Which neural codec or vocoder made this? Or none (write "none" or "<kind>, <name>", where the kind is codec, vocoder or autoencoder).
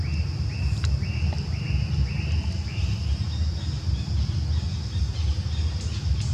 none